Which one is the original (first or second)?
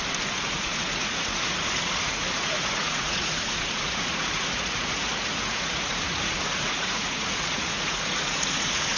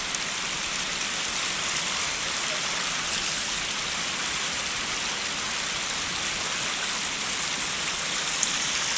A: second